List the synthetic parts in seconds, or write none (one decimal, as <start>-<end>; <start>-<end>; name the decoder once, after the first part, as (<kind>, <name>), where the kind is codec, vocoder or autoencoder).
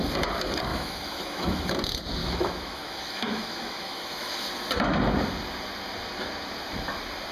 0.7-1.7 (autoencoder, DAC-VAE); 2.2-4.3